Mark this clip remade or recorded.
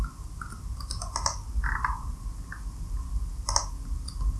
recorded